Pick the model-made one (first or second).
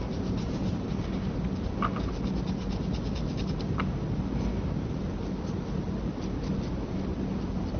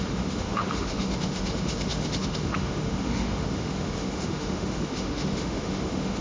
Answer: second